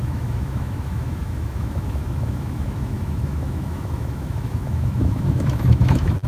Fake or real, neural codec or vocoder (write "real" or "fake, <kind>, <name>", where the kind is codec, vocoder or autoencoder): fake, autoencoder, DAC-VAE